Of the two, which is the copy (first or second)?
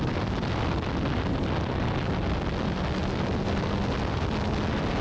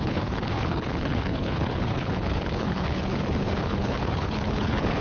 second